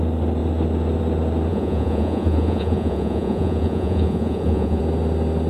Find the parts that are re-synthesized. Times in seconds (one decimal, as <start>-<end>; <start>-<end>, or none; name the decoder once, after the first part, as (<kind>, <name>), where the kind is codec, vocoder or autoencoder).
1.5-4.8 (vocoder, Vocos)